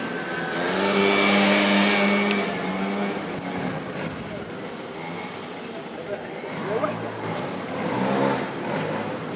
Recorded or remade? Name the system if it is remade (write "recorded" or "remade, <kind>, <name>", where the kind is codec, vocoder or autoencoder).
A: recorded